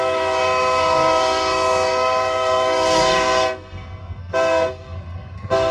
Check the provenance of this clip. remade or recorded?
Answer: remade